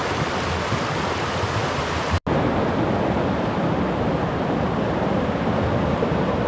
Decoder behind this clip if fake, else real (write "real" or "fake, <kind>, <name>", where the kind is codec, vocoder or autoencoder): real